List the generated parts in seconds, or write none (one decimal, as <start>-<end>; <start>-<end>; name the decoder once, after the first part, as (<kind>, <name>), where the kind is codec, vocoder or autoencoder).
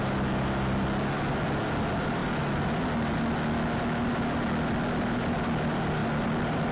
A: none